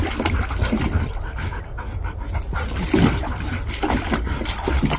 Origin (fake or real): real